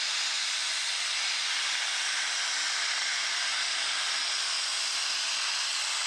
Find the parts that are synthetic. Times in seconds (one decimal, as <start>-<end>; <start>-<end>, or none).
none